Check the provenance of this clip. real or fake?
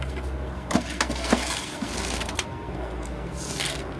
fake